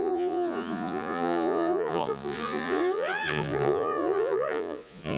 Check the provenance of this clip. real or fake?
fake